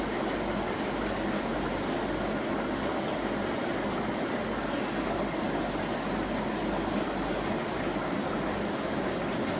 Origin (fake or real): real